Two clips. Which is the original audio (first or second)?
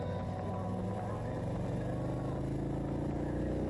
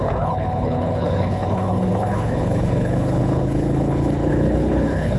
first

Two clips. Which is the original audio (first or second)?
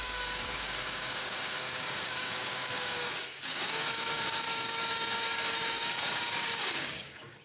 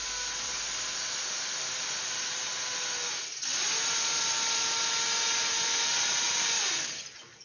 second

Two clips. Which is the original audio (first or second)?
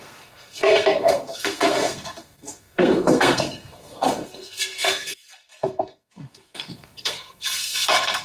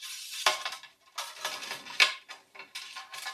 second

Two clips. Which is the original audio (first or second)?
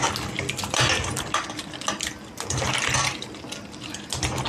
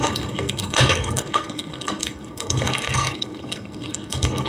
first